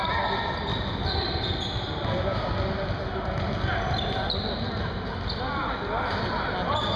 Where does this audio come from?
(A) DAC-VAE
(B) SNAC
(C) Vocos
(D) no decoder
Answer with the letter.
D